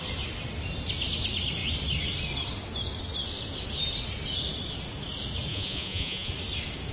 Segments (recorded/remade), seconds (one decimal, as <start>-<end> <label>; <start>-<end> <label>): 0.0-5.5 recorded; 5.5-6.3 remade; 6.3-6.9 recorded